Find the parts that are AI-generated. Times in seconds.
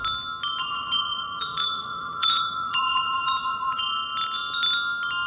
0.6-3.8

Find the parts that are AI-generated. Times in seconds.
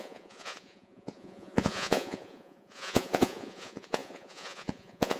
0.0-5.2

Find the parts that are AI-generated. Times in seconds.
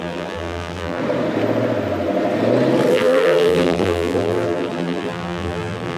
0.0-1.0; 2.9-6.0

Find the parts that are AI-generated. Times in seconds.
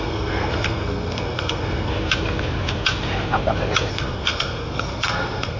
0.0-1.9; 3.9-5.6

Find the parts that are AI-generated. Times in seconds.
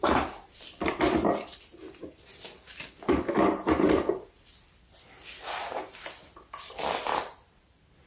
0.0-8.1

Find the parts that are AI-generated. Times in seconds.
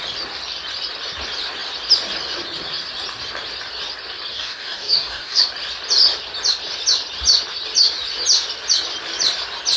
4.3-5.4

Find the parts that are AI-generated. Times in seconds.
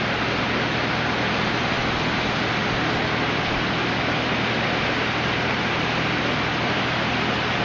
none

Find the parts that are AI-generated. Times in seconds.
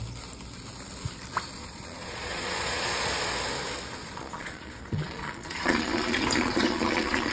1.6-3.3; 4.0-7.3